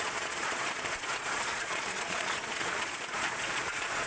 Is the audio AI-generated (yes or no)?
yes